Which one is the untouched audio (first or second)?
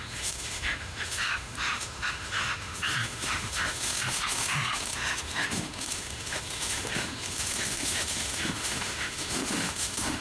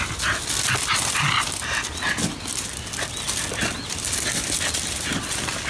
second